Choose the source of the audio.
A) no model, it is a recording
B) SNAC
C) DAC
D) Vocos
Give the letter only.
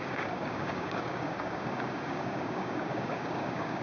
C